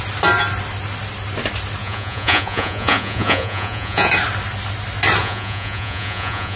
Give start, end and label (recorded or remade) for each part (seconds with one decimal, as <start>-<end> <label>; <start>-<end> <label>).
0.0-1.8 recorded; 1.8-4.1 remade; 4.1-5.2 recorded; 5.2-6.6 remade